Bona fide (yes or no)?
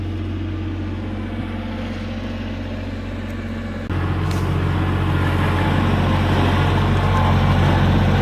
yes